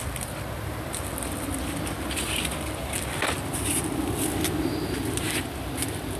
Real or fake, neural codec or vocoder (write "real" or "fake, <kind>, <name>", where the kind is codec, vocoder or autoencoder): real